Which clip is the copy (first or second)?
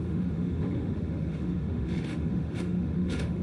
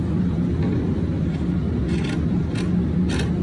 first